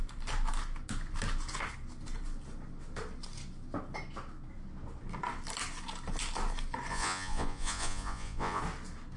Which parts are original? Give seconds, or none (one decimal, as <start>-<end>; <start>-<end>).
0.0-6.9; 8.6-9.2